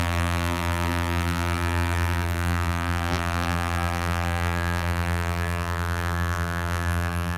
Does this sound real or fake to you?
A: fake